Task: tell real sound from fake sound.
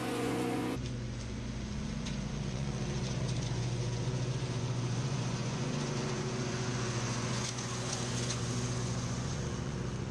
fake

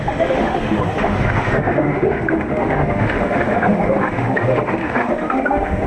fake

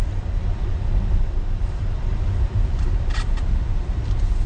fake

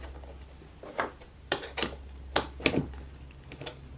real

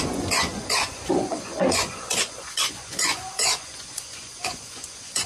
fake